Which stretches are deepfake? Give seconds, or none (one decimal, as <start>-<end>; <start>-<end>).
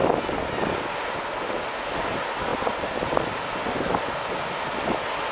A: none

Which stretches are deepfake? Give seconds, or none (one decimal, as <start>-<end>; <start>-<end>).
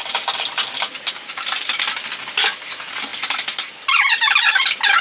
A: 1.2-1.8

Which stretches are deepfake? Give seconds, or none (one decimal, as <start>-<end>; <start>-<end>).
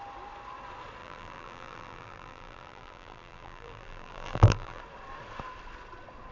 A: 1.0-4.8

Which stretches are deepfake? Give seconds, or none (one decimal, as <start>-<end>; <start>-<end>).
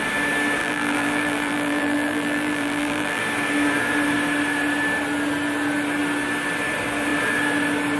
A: 0.6-3.2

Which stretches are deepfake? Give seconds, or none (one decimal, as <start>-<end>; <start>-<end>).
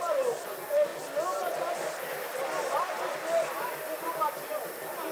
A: none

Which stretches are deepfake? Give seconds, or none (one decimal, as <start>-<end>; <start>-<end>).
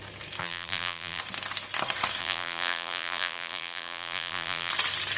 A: 0.4-1.2; 2.2-4.7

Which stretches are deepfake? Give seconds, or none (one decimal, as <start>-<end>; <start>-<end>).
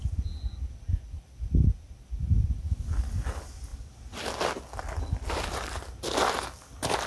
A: none